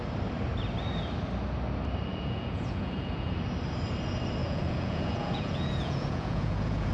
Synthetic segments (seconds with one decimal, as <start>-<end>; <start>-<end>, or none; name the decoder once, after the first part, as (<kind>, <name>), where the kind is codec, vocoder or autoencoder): 2.1-3.3 (vocoder, Vocos); 4.4-6.9